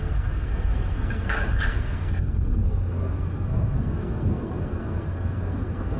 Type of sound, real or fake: fake